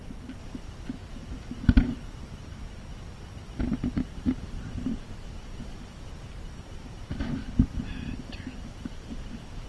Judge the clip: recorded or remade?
recorded